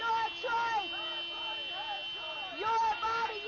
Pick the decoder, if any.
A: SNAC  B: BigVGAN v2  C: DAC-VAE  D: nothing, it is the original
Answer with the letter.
D